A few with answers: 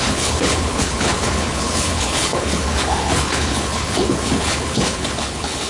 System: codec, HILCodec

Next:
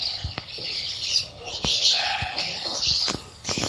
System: codec, HILCodec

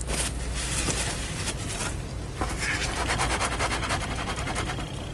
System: none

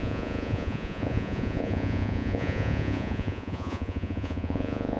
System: vocoder, Vocos